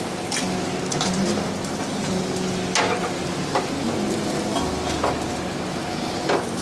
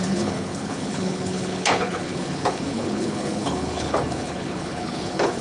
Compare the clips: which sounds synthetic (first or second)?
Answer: second